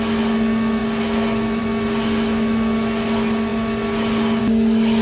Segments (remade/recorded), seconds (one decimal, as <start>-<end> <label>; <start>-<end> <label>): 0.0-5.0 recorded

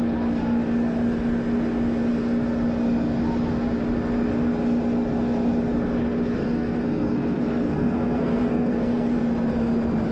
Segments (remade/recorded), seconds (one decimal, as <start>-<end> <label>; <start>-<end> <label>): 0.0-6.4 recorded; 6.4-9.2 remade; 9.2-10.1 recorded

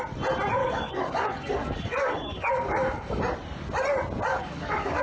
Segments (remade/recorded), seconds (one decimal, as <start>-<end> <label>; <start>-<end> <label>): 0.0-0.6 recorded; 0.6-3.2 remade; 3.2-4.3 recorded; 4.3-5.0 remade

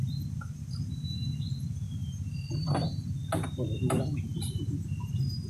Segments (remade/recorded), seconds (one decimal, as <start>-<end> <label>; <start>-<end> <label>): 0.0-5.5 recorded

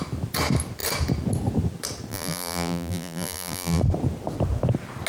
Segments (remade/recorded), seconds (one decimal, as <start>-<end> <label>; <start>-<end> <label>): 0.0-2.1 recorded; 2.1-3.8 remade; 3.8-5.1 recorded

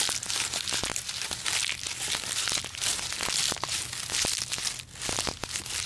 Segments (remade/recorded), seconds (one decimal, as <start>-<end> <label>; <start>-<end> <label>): 0.0-5.9 recorded